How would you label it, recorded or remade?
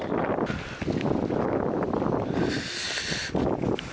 recorded